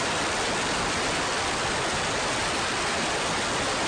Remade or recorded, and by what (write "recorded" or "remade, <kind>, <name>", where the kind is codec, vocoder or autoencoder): recorded